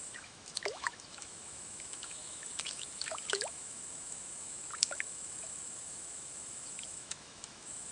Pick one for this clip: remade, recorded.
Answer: remade